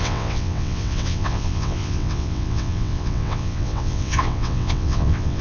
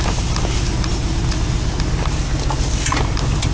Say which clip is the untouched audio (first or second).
second